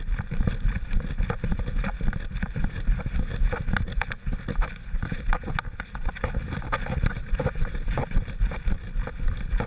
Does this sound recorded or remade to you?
recorded